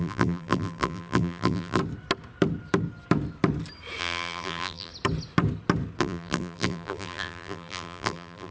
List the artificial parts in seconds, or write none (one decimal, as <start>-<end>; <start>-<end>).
0.0-1.8; 4.0-4.9; 6.0-8.5